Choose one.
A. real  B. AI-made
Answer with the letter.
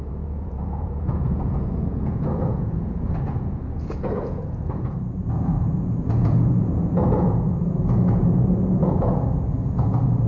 B